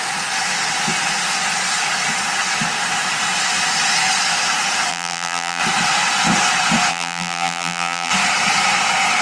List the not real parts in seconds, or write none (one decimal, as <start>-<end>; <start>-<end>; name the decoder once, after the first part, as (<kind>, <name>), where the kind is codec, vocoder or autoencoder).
4.9-5.6 (vocoder, BigVGAN v2); 6.9-8.1